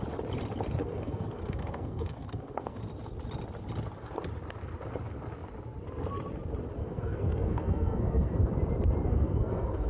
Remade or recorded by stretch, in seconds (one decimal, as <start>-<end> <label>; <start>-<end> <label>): 0.0-0.8 recorded; 0.8-2.8 remade; 2.8-6.8 recorded; 6.8-8.5 remade; 8.5-9.0 recorded; 9.0-9.9 remade